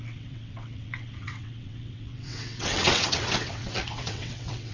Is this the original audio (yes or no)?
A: no